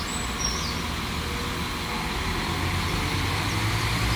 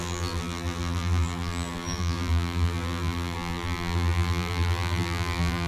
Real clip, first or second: first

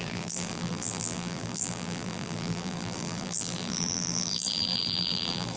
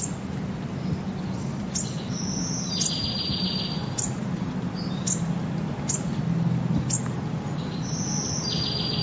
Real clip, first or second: second